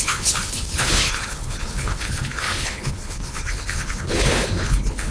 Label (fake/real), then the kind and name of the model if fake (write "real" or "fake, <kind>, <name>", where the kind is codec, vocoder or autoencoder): fake, codec, HILCodec